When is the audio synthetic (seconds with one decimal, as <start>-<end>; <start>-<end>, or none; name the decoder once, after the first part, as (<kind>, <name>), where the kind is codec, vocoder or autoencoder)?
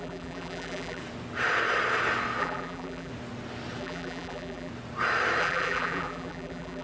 0.0-1.0 (vocoder, BigVGAN v2); 2.4-3.1; 3.8-4.7; 5.4-6.8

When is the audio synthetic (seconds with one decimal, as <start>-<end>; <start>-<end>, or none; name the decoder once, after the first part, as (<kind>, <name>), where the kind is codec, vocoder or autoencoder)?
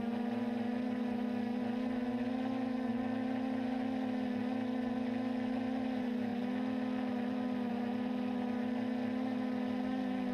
none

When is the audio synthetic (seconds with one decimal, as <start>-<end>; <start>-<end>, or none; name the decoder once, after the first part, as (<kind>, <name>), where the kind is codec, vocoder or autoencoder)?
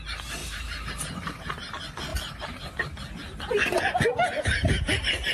0.4-0.9 (vocoder, BigVGAN v2)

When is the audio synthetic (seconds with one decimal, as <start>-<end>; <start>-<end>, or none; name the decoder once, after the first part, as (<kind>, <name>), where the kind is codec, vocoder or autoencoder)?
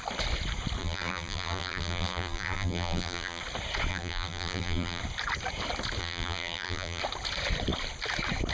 0.8-3.4 (vocoder, BigVGAN v2); 3.9-5.0; 6.0-7.0